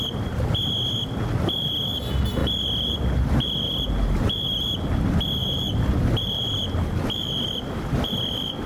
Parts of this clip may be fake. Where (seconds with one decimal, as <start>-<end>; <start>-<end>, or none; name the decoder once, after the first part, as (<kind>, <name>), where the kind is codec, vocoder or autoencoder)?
2.4-3.8 (vocoder, BigVGAN v2); 5.4-8.7